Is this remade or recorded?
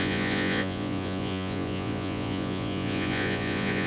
remade